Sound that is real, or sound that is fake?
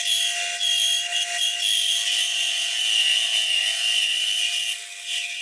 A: real